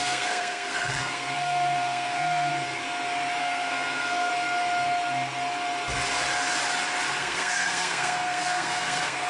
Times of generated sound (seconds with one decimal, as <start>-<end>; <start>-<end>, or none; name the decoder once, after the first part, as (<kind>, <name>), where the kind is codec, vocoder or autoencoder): 0.0-2.5 (codec, SNAC); 3.4-4.3; 7.2-9.3